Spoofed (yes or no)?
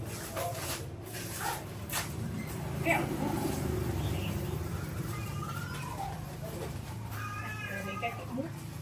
yes